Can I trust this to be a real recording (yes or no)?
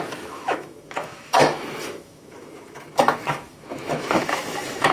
no